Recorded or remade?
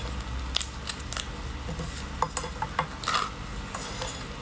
recorded